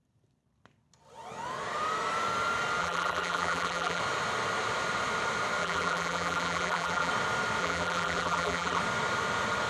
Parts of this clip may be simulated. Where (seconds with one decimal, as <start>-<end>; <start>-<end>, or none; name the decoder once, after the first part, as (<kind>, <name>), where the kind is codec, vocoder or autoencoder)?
2.8-4.0 (vocoder, BigVGAN v2); 5.6-7.1; 7.6-8.8